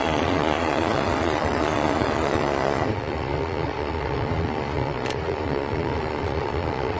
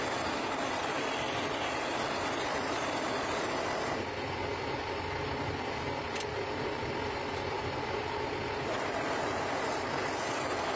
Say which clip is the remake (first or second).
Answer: first